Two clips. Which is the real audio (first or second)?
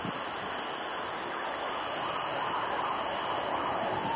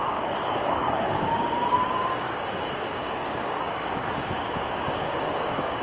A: first